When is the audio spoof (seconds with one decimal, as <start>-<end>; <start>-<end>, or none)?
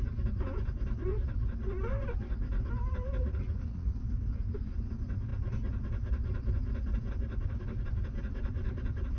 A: 3.2-3.9